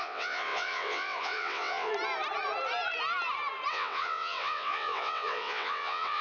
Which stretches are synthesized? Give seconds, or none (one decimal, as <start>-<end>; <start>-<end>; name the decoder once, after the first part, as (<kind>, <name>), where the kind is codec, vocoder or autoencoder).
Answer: 0.0-1.9 (vocoder, WaveNeXt); 3.7-6.2